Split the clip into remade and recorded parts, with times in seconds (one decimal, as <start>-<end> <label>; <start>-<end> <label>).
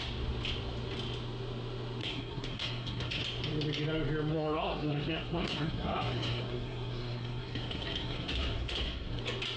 0.0-2.0 recorded; 2.0-3.2 remade; 3.2-4.3 recorded; 4.3-9.2 remade; 9.2-9.6 recorded